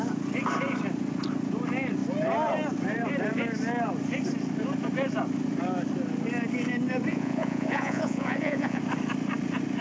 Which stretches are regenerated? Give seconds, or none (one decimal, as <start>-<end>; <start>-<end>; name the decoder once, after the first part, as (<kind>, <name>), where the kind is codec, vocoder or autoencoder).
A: 7.1-8.8 (vocoder, Vocos)